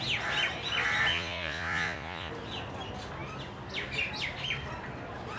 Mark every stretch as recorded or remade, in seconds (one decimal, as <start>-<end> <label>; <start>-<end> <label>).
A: 0.0-1.1 recorded; 1.1-2.3 remade; 2.3-5.4 recorded